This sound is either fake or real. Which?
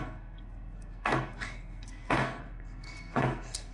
fake